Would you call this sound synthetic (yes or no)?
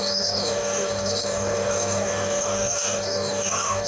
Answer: yes